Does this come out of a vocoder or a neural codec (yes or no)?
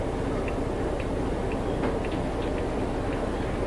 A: no